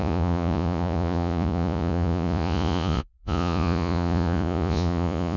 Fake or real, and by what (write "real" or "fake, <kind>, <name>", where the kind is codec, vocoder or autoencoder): fake, vocoder, Vocos